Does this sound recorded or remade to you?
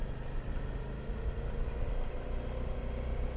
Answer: recorded